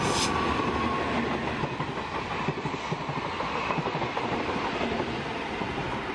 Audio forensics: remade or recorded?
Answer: recorded